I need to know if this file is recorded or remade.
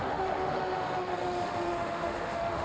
remade